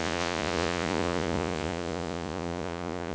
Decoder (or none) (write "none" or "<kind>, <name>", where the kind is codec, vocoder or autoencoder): vocoder, Vocos